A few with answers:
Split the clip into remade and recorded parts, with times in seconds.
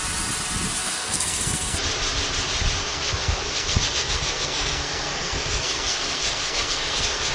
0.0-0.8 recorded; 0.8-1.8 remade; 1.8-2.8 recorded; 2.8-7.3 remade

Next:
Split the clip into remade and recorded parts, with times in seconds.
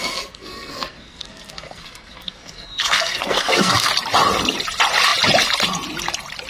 0.0-3.9 remade; 3.9-6.5 recorded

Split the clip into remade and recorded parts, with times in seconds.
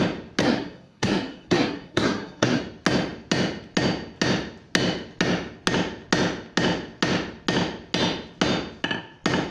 0.0-0.4 recorded; 0.4-2.6 remade; 2.6-9.5 recorded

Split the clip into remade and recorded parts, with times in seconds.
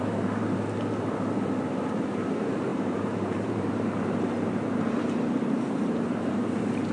0.0-6.9 remade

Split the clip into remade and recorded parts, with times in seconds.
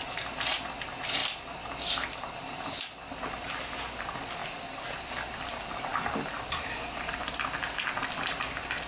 0.0-8.9 recorded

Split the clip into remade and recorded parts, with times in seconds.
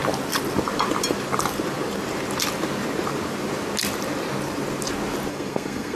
0.0-5.3 recorded; 5.3-6.0 remade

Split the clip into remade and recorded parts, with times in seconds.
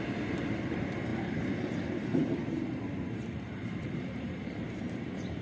0.0-5.4 remade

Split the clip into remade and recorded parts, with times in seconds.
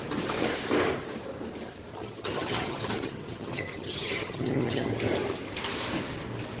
0.0-1.9 recorded; 1.9-4.9 remade; 4.9-6.6 recorded